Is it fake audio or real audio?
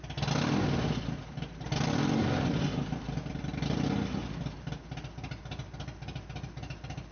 real